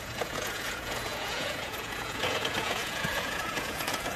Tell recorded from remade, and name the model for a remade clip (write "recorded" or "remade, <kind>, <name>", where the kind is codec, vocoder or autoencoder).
remade, vocoder, Vocos